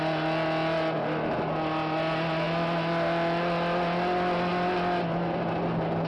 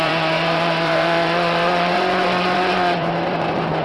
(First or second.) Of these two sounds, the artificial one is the second